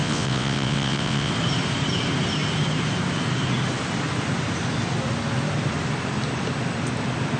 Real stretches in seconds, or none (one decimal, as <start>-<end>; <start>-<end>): 1.3-7.4